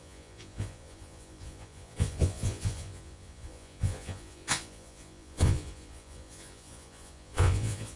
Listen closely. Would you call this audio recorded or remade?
remade